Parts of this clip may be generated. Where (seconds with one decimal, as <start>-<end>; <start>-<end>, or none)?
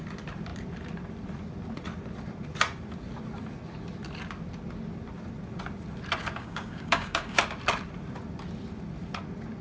6.2-7.4